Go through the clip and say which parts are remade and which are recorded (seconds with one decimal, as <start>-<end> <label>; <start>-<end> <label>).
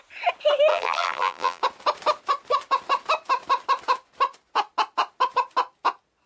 0.0-0.7 recorded; 0.7-1.6 remade; 1.6-6.3 recorded